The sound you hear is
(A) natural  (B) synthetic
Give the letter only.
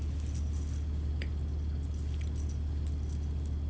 A